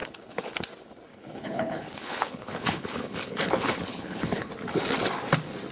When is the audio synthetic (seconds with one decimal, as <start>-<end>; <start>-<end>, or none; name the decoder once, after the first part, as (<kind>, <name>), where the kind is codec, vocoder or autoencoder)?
0.0-0.5 (codec, HILCodec); 1.1-4.5